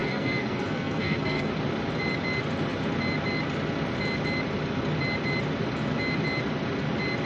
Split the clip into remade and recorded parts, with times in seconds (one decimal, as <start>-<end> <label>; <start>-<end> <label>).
0.0-1.5 remade; 1.5-7.3 recorded